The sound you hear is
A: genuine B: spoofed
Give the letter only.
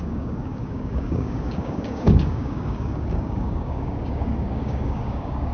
B